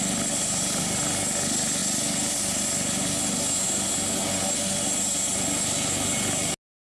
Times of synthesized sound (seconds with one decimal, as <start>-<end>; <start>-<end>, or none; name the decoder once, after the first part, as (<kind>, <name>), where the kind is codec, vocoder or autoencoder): none